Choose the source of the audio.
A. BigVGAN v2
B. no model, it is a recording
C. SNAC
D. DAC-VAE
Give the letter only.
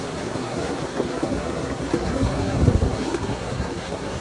C